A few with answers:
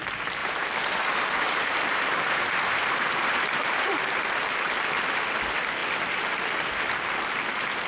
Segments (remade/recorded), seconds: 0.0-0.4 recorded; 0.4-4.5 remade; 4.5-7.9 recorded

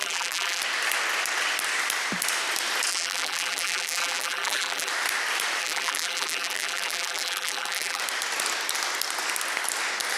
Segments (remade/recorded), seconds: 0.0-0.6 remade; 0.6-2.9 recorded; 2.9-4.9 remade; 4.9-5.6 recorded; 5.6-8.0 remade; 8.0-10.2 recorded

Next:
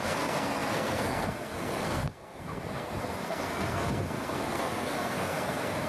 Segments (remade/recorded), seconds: 0.0-5.9 remade